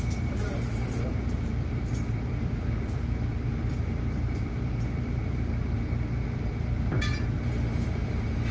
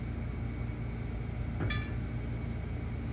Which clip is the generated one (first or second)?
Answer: first